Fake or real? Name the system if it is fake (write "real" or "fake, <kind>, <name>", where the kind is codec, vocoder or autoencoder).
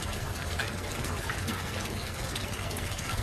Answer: fake, codec, SNAC